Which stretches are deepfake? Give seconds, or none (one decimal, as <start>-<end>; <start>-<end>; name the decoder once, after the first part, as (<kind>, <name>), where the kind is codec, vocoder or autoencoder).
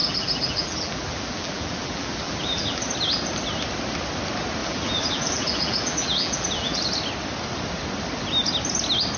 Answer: 0.0-2.9 (vocoder, BigVGAN v2); 4.6-6.8